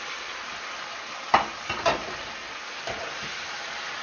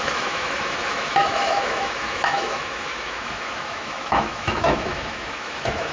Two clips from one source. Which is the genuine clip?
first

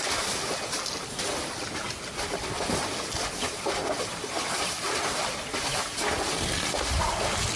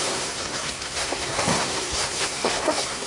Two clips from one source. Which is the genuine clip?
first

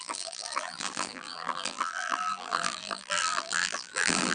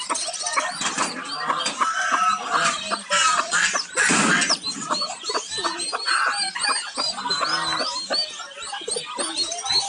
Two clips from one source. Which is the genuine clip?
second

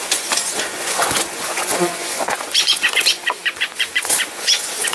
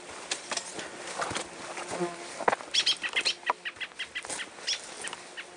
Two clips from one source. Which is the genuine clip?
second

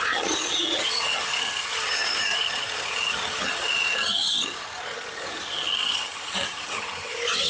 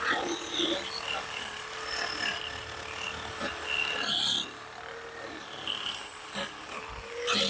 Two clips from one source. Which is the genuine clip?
second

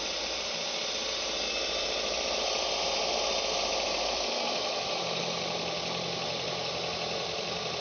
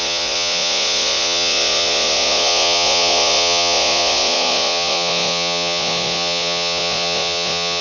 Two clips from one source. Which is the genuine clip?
first